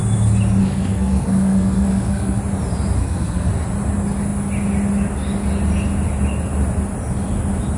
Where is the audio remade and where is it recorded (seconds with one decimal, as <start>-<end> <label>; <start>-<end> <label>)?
0.0-0.6 recorded; 0.6-2.4 remade; 2.4-3.0 recorded; 3.0-3.5 remade; 3.5-7.8 recorded